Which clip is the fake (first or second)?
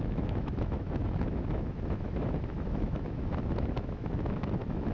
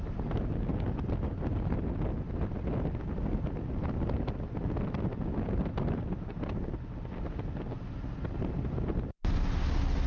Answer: first